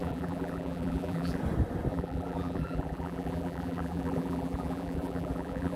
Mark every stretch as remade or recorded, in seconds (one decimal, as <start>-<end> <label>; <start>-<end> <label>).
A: 0.0-1.4 remade; 1.4-1.9 recorded; 1.9-5.8 remade